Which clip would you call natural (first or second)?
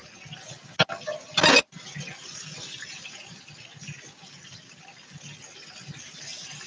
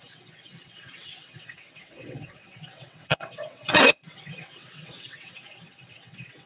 first